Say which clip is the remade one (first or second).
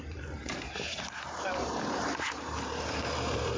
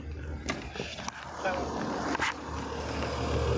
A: first